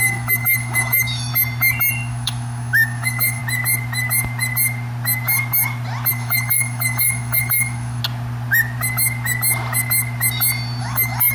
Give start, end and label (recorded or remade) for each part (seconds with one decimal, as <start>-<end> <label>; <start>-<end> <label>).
0.0-1.3 remade; 1.3-1.9 recorded; 1.9-3.4 remade; 3.4-6.1 recorded; 6.1-8.0 remade; 8.0-10.8 recorded; 10.8-11.3 remade